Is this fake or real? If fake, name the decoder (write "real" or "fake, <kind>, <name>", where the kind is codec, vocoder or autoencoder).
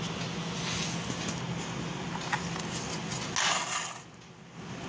real